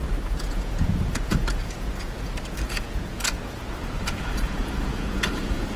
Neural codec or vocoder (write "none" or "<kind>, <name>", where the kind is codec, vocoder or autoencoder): vocoder, Vocos